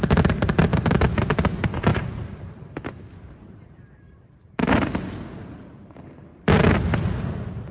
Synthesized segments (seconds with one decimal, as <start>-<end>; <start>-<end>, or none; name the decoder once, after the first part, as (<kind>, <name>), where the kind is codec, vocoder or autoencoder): 0.0-6.3 (vocoder, BigVGAN v2); 7.1-7.7